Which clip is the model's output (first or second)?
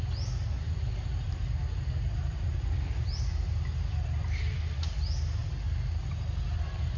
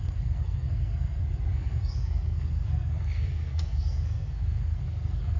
second